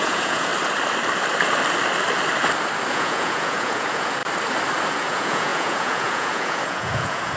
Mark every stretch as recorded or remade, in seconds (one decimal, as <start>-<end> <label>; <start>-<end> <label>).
0.0-0.5 remade; 0.5-2.9 recorded; 2.9-4.2 remade; 4.2-4.9 recorded; 4.9-7.4 remade